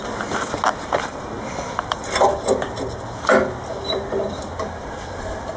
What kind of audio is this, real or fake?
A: real